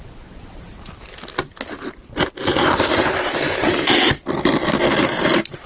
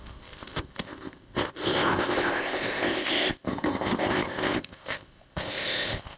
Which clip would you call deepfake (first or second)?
second